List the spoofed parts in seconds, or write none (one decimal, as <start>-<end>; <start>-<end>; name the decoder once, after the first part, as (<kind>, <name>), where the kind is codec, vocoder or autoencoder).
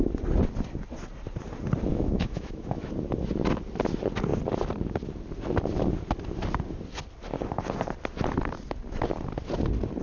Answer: 1.9-2.9 (autoencoder, DAC-VAE)